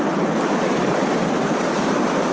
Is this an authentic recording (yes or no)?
no